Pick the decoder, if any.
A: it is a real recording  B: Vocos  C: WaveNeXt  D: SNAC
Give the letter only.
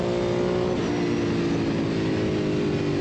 A